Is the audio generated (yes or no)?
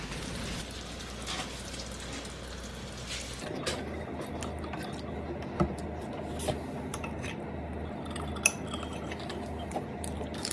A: no